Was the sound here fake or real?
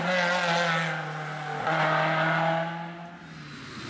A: real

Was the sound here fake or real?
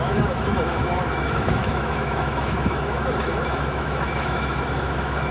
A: fake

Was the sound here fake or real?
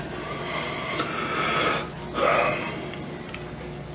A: real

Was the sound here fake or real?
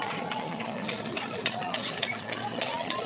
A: fake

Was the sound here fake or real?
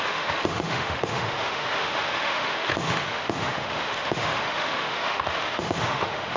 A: fake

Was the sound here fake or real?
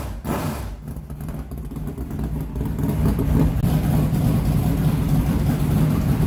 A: real